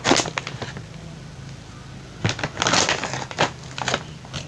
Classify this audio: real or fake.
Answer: real